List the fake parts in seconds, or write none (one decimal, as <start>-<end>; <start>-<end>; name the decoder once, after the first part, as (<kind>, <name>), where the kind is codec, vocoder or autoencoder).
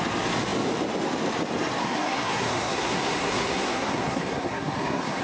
1.8-5.2 (codec, SNAC)